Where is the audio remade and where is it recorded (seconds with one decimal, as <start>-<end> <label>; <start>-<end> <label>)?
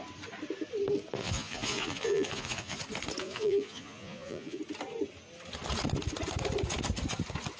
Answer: 0.0-1.2 recorded; 1.2-2.8 remade; 2.8-3.2 recorded; 3.2-4.6 remade; 4.6-7.6 recorded